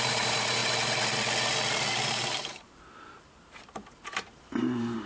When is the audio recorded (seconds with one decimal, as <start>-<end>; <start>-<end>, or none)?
0.6-2.6